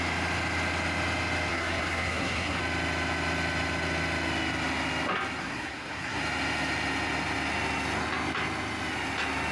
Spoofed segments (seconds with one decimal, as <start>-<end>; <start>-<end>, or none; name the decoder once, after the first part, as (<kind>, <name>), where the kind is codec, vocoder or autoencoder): 1.5-2.6 (codec, SNAC); 5.4-6.2